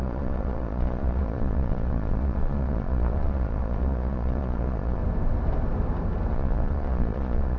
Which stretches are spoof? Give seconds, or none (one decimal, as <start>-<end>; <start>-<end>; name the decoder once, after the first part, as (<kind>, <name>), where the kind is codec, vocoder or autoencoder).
0.0-5.0 (vocoder, Vocos); 6.3-7.6